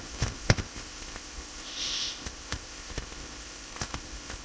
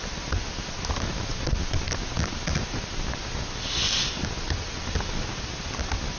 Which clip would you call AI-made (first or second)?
first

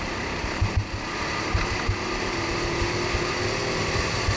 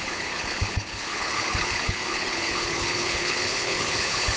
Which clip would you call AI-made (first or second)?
second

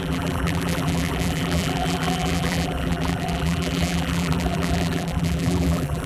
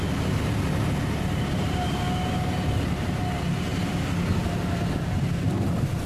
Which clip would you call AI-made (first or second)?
first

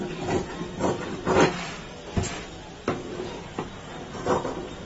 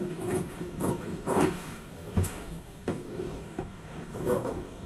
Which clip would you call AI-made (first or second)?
second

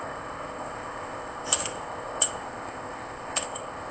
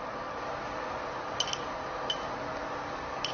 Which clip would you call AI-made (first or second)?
first